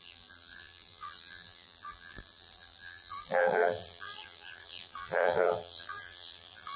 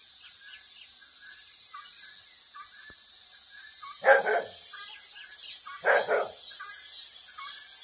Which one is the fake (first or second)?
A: first